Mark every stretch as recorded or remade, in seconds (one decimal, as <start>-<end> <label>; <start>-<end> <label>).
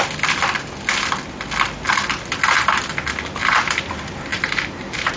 0.0-3.4 recorded; 3.4-3.9 remade; 3.9-4.3 recorded; 4.3-5.2 remade